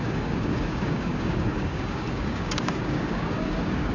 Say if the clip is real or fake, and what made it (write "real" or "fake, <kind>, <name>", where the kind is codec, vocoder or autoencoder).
fake, codec, DAC